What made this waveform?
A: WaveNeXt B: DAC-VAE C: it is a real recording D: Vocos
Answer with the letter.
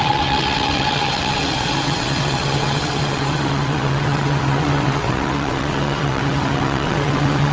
A